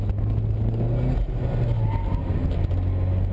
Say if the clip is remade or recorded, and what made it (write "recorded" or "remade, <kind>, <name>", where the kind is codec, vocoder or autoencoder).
recorded